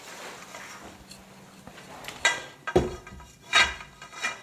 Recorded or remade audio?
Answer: recorded